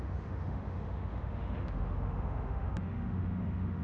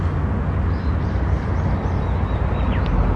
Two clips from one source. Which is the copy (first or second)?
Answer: first